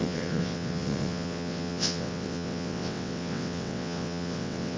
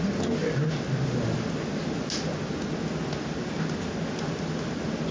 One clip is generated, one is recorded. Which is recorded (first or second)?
second